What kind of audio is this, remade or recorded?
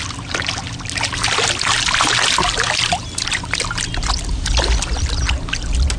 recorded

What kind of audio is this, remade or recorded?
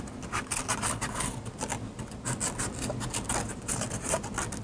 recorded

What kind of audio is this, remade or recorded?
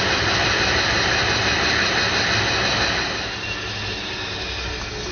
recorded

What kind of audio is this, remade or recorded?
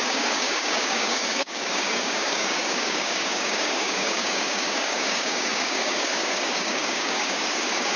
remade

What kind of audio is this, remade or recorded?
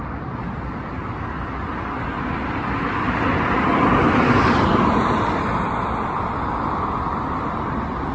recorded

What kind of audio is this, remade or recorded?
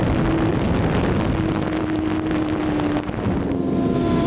recorded